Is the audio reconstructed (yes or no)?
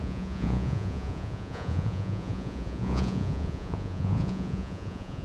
yes